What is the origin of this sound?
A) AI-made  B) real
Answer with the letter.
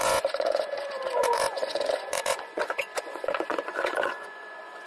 A